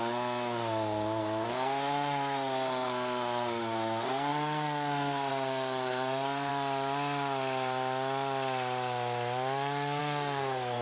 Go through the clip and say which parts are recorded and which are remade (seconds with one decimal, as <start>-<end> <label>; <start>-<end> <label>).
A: 0.0-6.5 remade; 6.5-10.0 recorded; 10.0-10.8 remade